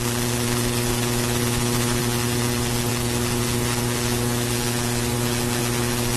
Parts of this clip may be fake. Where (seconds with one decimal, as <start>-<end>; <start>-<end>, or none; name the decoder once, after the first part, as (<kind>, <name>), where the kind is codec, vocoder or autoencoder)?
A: 0.9-2.0 (autoencoder, DAC-VAE)